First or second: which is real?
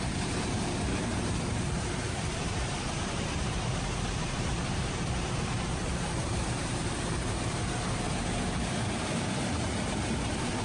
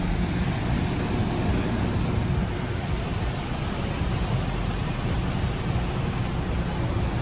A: second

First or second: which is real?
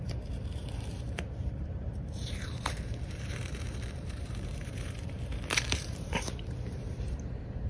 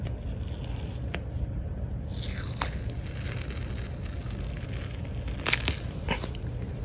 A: second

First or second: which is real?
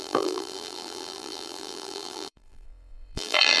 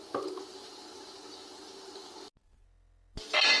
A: second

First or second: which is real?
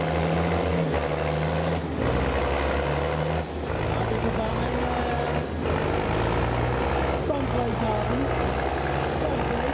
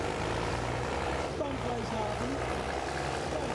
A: first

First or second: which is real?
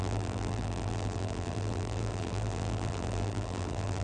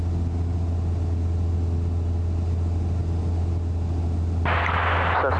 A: second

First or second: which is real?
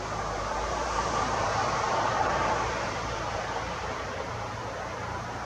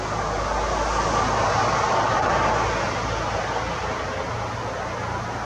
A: second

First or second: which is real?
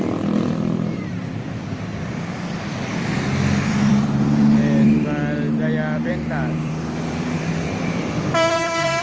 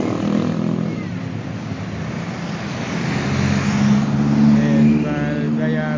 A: second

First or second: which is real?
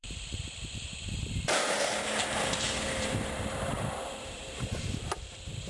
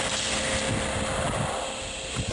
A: second